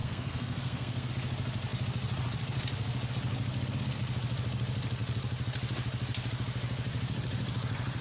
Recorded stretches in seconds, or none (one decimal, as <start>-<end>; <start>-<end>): 1.1-8.0